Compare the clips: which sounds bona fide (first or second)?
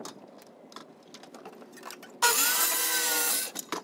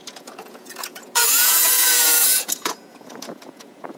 first